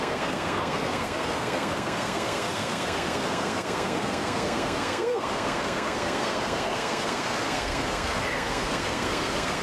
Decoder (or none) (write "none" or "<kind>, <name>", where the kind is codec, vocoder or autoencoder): codec, SNAC